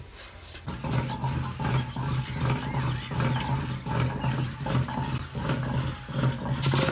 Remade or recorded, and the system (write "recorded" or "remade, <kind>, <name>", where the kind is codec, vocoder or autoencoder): recorded